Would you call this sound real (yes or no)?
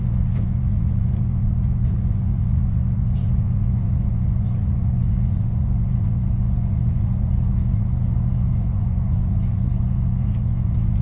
no